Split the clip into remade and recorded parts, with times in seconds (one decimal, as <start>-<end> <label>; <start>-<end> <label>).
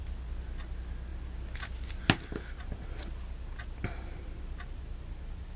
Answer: 0.0-5.6 recorded